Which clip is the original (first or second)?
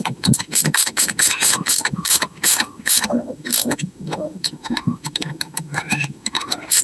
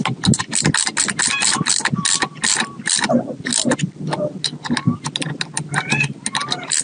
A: second